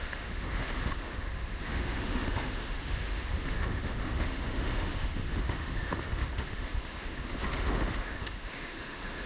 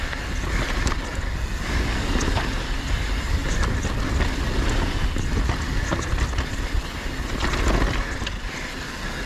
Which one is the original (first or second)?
second